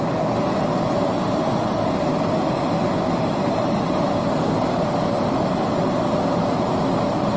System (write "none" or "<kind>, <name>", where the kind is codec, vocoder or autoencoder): none